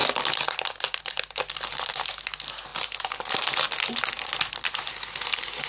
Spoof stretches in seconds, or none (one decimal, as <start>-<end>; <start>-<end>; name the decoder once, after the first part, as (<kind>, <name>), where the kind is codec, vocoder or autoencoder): none